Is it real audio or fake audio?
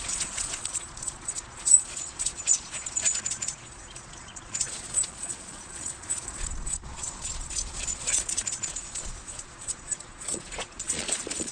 fake